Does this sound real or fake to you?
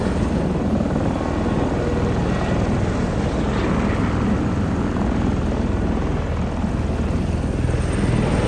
real